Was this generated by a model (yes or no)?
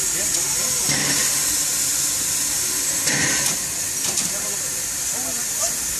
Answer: no